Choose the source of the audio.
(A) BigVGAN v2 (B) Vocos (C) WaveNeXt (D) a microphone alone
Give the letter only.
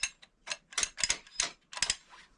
D